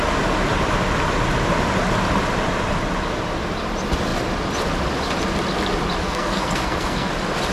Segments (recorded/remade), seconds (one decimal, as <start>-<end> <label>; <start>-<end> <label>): 0.0-6.0 recorded; 6.0-7.1 remade; 7.1-7.5 recorded